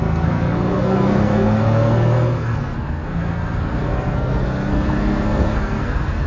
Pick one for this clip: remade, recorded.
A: remade